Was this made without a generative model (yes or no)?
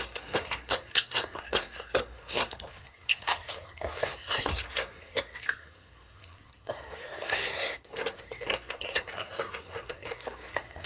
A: no